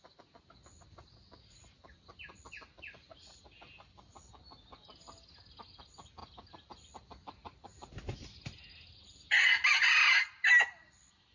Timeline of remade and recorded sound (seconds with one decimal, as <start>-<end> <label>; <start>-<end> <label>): 0.0-11.3 recorded